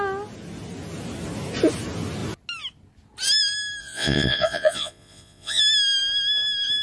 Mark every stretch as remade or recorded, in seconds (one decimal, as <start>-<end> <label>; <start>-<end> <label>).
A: 0.0-3.8 recorded; 3.8-5.6 remade; 5.6-6.8 recorded